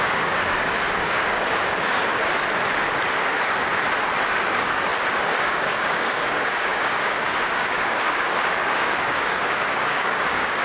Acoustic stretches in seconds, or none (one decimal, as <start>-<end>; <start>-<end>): 2.2-3.2; 3.7-4.3; 4.9-5.4

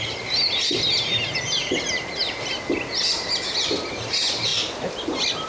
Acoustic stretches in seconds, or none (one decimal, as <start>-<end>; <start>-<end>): 0.0-5.5

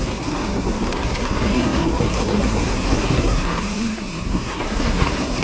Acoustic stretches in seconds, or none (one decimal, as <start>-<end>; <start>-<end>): none

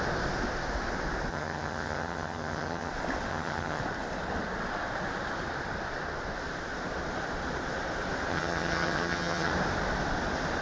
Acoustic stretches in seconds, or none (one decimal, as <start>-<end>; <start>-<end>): 0.0-1.3; 2.9-3.3; 3.8-8.3; 9.5-10.6